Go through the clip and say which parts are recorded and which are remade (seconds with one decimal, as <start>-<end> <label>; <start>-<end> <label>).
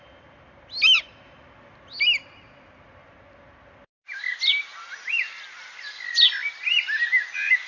0.0-7.7 recorded